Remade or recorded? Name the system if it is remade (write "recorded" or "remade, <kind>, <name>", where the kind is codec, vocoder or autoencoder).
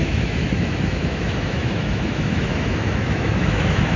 remade, autoencoder, DAC-VAE